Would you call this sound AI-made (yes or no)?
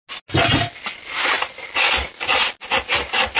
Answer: no